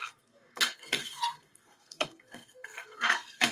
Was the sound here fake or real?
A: fake